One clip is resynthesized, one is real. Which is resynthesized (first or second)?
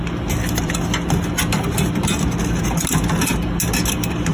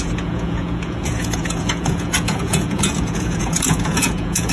second